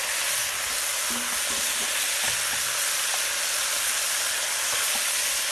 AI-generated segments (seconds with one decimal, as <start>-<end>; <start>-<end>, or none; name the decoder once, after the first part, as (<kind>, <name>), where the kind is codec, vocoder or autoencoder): none